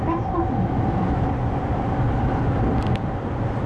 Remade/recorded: remade